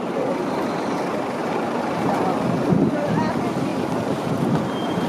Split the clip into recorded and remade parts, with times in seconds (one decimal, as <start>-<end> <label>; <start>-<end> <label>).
0.0-1.4 recorded; 1.4-2.0 remade; 2.0-3.7 recorded; 3.7-4.3 remade; 4.3-5.1 recorded